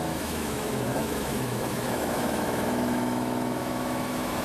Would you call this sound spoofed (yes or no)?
yes